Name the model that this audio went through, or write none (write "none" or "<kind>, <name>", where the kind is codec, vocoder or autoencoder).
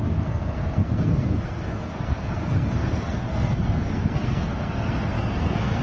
codec, SNAC